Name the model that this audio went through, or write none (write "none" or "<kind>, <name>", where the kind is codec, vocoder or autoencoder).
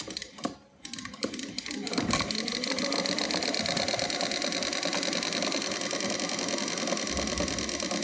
vocoder, BigVGAN v2